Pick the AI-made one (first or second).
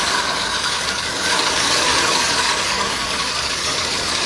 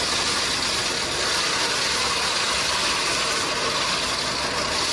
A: first